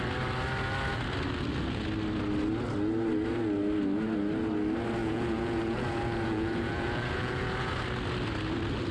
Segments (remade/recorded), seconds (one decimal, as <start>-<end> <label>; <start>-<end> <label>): 0.0-5.0 recorded; 5.0-7.7 remade; 7.7-8.9 recorded